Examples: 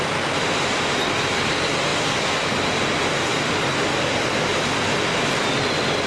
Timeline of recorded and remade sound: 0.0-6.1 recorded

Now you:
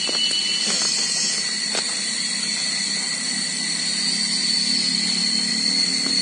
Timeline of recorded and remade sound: 0.0-6.2 recorded

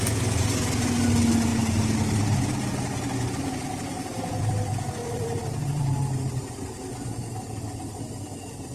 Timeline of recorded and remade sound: 0.0-5.0 recorded; 5.0-6.2 remade; 6.2-8.7 recorded

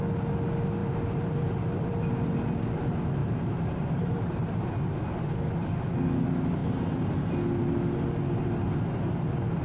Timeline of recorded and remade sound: 0.0-0.8 recorded; 0.8-2.7 remade; 2.7-3.2 recorded; 3.2-4.7 remade; 4.7-9.6 recorded

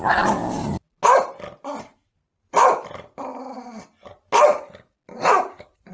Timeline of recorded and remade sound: 0.0-0.4 remade; 0.4-1.8 recorded; 1.8-3.3 remade; 3.3-5.1 recorded; 5.1-5.9 remade

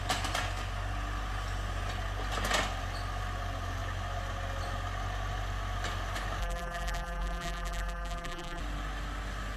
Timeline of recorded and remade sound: 0.0-6.4 recorded; 6.4-8.6 remade; 8.6-9.6 recorded

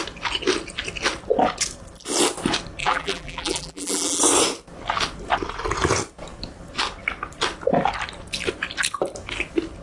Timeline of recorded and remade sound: 0.0-2.8 recorded; 2.8-4.2 remade; 4.2-9.8 recorded

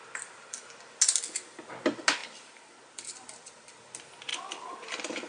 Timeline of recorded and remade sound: 0.0-2.2 recorded; 2.2-3.9 remade; 3.9-4.3 recorded; 4.3-5.3 remade